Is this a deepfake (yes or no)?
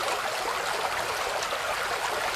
no